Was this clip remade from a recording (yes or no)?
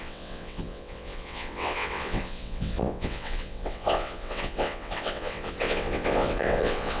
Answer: yes